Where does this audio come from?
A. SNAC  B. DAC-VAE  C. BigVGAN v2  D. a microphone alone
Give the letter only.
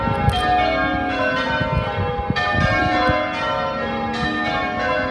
D